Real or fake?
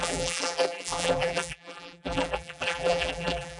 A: fake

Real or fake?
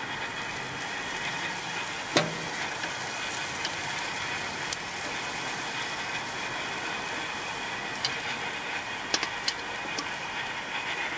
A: real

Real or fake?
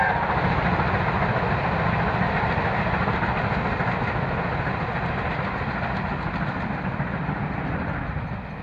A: real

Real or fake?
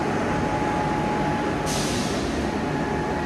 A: real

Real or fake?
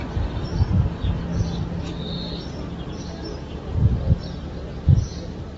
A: real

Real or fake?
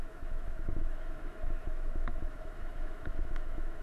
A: fake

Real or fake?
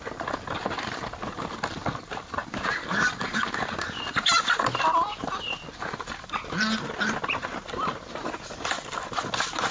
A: real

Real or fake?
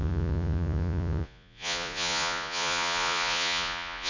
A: fake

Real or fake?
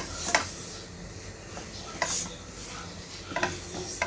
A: real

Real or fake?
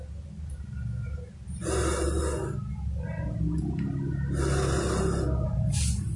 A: real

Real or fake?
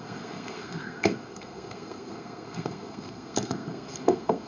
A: fake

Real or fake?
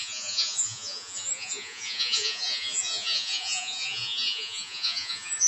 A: fake